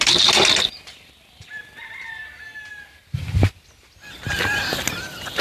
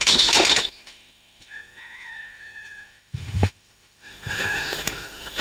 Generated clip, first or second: second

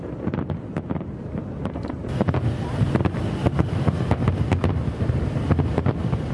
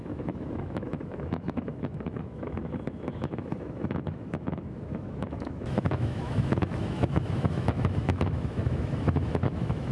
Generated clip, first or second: second